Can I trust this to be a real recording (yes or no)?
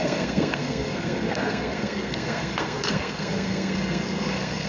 no